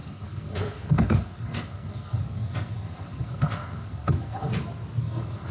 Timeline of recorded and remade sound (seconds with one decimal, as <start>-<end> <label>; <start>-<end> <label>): 0.0-4.5 remade; 4.5-5.0 recorded; 5.0-5.5 remade

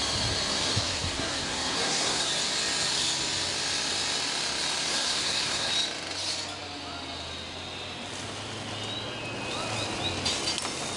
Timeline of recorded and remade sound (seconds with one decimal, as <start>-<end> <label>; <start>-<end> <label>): 0.0-0.7 recorded; 0.7-2.3 remade; 2.3-4.9 recorded; 4.9-5.7 remade; 5.7-11.0 recorded

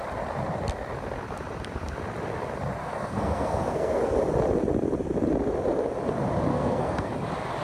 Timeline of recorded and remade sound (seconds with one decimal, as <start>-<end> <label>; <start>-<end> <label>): 0.0-2.8 recorded; 2.8-4.1 remade; 4.1-6.5 recorded; 6.5-7.1 remade; 7.1-7.6 recorded